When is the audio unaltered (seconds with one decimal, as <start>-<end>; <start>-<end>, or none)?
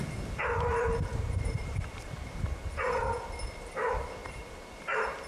0.0-1.1; 3.0-4.2; 4.7-5.3